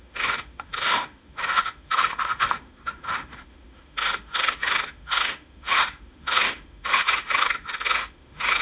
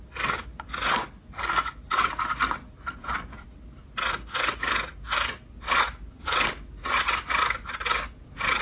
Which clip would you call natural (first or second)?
second